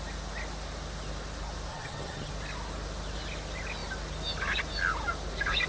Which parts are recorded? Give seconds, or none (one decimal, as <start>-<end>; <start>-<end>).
0.0-1.7; 2.3-5.7